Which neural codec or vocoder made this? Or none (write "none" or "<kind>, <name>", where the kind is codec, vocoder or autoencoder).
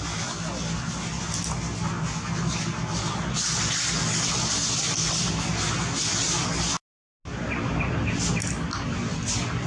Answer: none